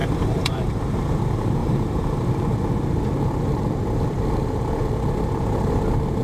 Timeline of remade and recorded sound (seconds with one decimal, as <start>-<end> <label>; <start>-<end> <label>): 0.0-0.8 remade; 0.8-1.6 recorded; 1.6-2.2 remade; 2.2-6.2 recorded

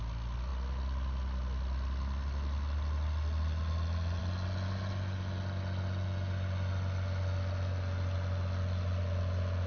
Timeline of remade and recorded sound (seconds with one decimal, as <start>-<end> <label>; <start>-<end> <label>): 0.0-9.7 recorded

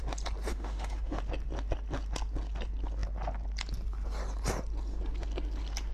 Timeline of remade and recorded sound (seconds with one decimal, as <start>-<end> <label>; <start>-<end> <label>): 0.0-0.5 recorded; 0.5-1.2 remade; 1.2-5.9 recorded

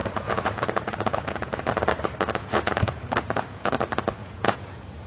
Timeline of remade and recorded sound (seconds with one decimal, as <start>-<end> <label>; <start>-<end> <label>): 0.0-1.6 remade; 1.6-2.4 recorded; 2.4-3.7 remade; 3.7-4.2 recorded; 4.2-5.1 remade

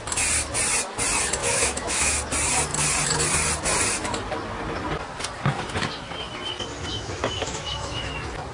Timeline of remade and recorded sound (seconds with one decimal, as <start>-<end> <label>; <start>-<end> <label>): 0.0-1.4 recorded; 1.4-2.1 remade; 2.1-6.9 recorded; 6.9-8.1 remade; 8.1-8.5 recorded

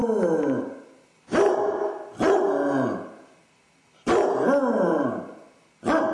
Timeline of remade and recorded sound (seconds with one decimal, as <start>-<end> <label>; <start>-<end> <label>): 0.0-6.1 recorded